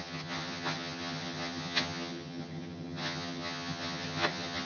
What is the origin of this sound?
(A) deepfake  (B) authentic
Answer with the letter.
A